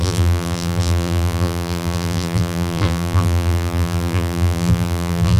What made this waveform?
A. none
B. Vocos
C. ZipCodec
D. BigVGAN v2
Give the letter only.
D